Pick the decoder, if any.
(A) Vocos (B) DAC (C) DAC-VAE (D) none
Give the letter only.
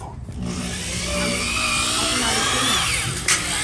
D